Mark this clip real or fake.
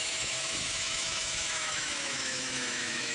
fake